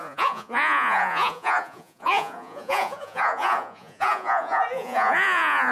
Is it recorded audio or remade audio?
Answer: remade